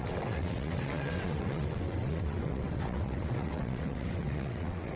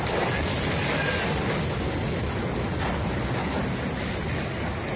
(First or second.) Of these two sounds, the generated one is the first